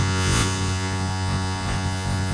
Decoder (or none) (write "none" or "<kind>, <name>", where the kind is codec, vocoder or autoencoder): vocoder, Vocos